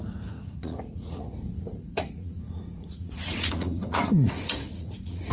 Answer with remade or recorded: remade